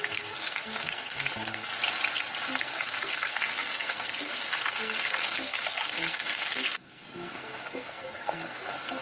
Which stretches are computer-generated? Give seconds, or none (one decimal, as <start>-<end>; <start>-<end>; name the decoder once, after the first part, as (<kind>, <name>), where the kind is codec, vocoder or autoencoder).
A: 0.0-1.7 (codec, SNAC); 2.6-9.0